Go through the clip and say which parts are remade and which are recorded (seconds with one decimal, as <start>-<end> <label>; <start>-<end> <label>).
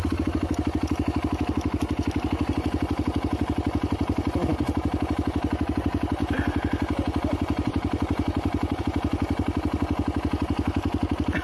0.0-6.2 recorded; 6.2-8.8 remade; 8.8-11.4 recorded